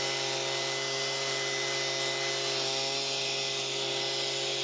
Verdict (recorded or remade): recorded